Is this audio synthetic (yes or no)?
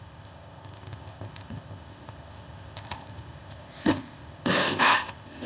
yes